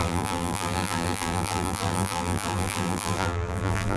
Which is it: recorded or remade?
remade